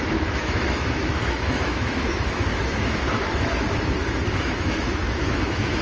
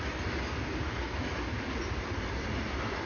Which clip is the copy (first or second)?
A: first